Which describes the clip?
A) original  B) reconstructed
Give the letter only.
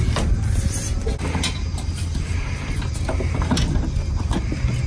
A